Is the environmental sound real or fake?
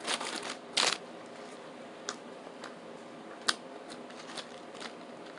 real